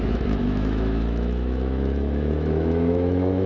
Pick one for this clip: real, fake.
fake